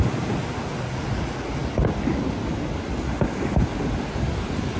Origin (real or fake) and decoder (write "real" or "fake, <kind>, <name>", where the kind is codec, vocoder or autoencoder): real